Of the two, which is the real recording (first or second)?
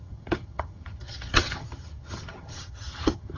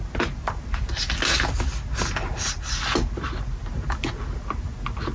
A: second